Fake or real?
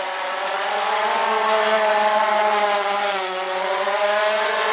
fake